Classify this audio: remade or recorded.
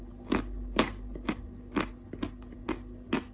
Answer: recorded